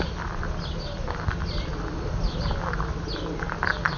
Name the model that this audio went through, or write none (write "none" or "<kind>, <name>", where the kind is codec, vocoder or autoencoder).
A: none